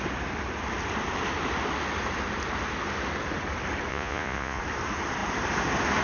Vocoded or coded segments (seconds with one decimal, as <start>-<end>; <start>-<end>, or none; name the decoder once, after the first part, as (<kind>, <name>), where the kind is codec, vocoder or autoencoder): 3.9-4.6 (vocoder, Vocos)